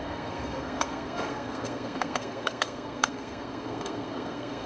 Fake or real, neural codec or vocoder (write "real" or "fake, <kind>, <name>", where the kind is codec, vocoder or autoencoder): fake, codec, SNAC